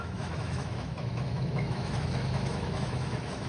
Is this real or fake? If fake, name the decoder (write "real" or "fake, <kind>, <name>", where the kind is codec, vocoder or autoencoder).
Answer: fake, autoencoder, DAC-VAE